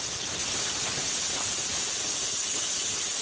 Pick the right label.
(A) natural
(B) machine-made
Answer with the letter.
A